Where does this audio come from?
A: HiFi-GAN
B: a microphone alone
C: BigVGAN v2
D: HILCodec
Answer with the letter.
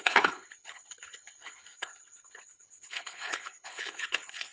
D